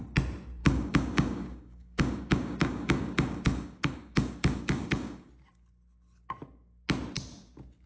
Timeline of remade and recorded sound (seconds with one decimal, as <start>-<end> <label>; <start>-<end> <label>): 0.0-0.6 recorded; 0.6-5.3 remade; 5.3-7.9 recorded